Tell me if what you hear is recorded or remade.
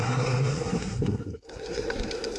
remade